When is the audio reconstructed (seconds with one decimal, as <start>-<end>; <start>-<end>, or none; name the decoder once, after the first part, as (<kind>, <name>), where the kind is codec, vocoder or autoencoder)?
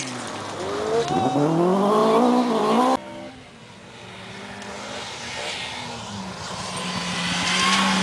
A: none